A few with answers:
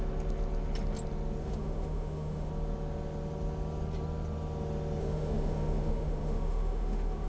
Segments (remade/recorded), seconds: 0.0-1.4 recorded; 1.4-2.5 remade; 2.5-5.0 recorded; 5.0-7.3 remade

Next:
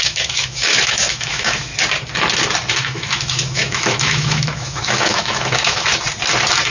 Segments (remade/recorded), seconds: 0.0-1.7 remade; 1.7-2.7 recorded; 2.7-5.9 remade; 5.9-6.7 recorded